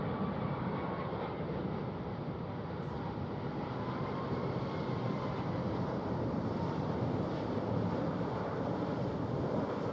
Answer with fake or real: fake